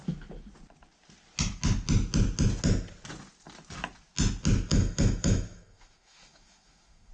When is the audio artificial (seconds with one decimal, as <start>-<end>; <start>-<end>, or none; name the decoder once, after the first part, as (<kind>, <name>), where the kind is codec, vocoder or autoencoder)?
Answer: 4.7-7.1 (autoencoder, DAC-VAE)